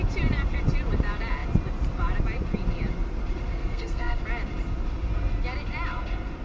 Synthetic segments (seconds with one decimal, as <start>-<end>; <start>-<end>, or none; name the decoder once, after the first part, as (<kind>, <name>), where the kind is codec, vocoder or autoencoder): 3.5-4.2 (codec, SNAC)

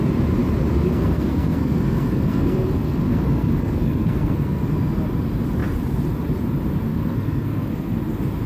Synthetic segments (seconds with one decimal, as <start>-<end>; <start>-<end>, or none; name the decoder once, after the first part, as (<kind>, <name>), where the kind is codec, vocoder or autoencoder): 0.7-4.6 (codec, SNAC); 6.9-8.0

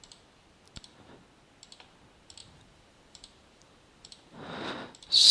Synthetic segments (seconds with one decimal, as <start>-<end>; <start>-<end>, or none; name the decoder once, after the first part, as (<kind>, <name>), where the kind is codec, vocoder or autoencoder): 2.4-4.7 (vocoder, BigVGAN v2)

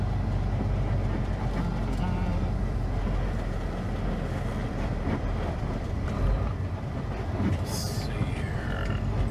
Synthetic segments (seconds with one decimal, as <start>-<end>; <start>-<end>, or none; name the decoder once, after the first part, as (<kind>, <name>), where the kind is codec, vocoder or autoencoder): 2.3-3.0 (vocoder, BigVGAN v2); 4.6-5.9

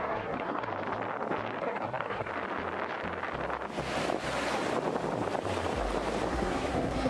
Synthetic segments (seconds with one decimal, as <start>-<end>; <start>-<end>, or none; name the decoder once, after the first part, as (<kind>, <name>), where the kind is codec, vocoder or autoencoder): 0.0-0.7 (codec, SNAC); 1.6-2.3; 6.3-7.1

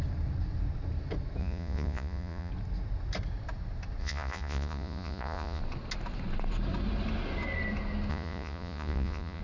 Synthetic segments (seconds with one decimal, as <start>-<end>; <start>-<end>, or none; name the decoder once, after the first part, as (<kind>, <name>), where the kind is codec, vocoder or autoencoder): 1.4-2.5 (vocoder, Vocos); 4.0-5.6; 8.1-9.4

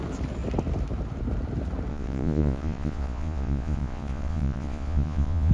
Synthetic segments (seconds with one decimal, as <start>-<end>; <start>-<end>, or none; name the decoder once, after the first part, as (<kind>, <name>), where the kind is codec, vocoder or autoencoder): 1.9-5.5 (vocoder, Vocos)